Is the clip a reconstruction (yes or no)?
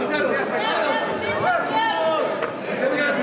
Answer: no